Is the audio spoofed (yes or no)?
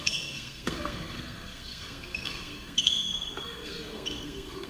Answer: yes